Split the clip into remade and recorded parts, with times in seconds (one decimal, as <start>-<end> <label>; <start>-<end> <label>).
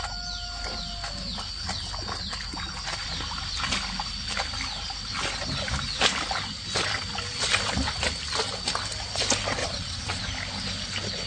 0.0-9.6 recorded; 9.6-10.2 remade; 10.2-11.3 recorded